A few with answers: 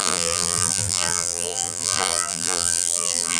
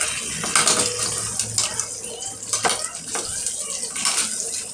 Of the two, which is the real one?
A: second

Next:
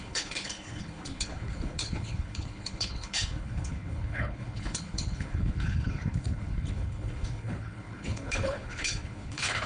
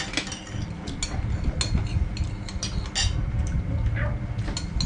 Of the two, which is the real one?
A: second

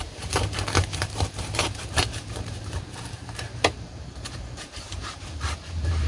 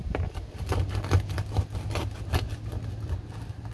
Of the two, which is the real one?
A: second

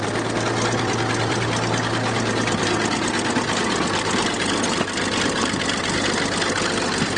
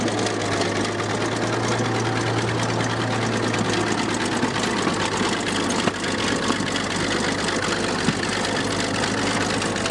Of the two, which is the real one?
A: second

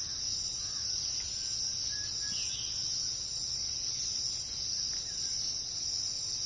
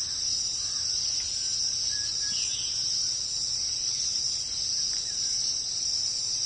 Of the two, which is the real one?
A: first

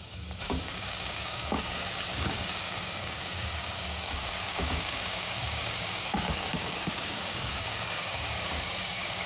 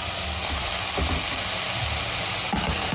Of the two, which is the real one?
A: second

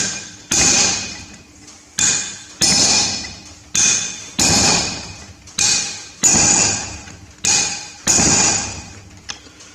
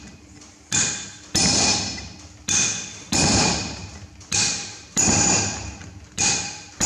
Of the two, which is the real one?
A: first